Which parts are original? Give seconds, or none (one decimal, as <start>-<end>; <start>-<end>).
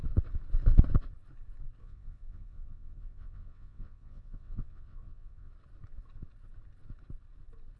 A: 0.0-1.8; 5.5-7.8